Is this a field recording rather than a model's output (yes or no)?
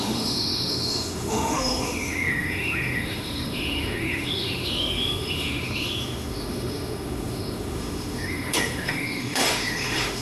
no